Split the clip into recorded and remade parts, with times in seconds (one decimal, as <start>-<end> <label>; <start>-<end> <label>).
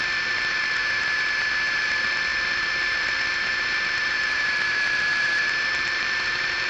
0.0-0.8 remade; 0.8-1.7 recorded; 1.7-6.7 remade